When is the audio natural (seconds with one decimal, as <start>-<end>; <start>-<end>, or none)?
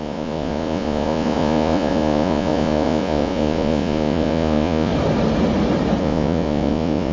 4.9-6.0